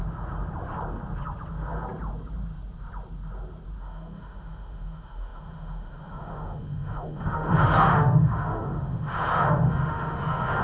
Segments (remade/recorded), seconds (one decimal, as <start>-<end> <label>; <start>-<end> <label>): 0.0-3.8 recorded; 3.8-10.6 remade